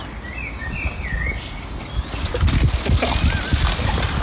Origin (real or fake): real